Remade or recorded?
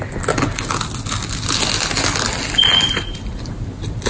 recorded